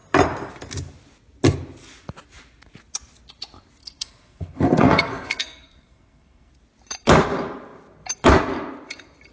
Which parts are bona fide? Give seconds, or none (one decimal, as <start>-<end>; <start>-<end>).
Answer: 0.0-3.8; 6.5-9.3